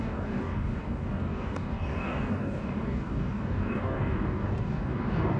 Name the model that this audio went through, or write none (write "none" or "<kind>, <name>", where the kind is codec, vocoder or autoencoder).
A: codec, DAC